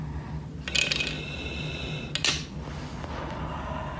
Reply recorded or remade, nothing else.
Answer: recorded